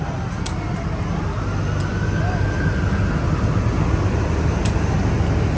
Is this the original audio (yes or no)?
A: yes